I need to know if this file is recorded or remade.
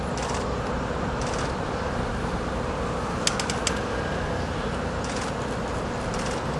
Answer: recorded